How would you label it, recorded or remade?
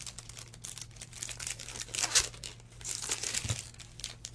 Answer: recorded